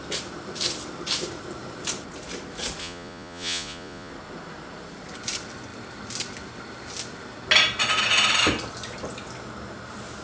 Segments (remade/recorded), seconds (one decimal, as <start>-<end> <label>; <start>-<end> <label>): 0.0-2.8 recorded; 2.8-4.1 remade; 4.1-10.2 recorded